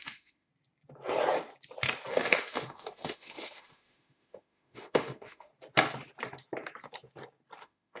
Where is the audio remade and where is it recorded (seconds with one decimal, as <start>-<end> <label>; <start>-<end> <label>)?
0.0-0.5 remade; 0.5-2.1 recorded; 2.1-5.5 remade; 5.5-7.6 recorded; 7.6-8.0 remade